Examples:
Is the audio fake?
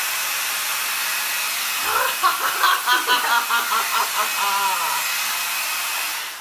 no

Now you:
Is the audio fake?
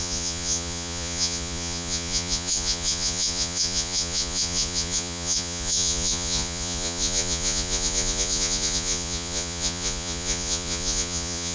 yes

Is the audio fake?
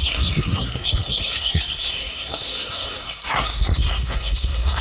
yes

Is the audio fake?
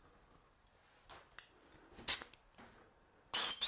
no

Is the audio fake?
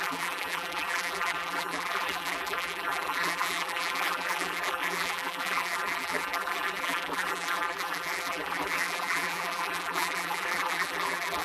yes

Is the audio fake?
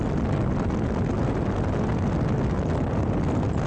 no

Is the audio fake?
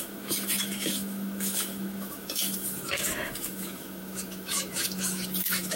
yes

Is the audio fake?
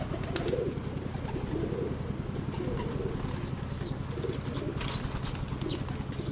no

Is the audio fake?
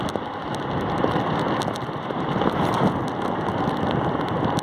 no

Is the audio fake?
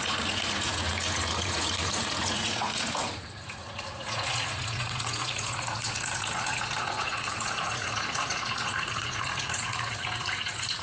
yes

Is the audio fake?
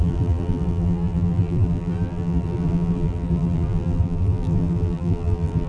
yes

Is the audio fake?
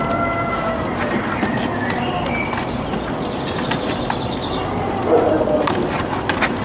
no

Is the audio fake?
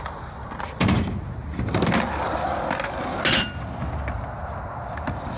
no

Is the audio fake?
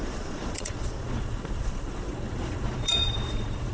yes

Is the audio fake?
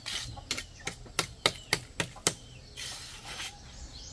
no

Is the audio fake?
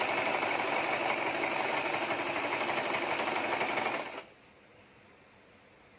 no